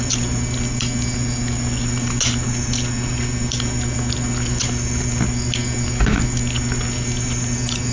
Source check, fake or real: real